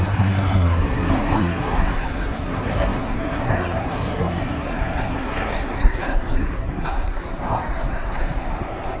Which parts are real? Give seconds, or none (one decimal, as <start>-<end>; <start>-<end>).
none